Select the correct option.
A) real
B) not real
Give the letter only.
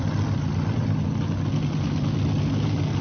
A